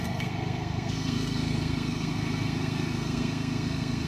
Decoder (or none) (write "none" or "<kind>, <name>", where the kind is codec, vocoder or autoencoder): codec, SNAC